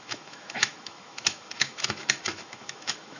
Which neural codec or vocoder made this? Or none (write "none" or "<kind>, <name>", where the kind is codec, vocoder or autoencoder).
autoencoder, DAC-VAE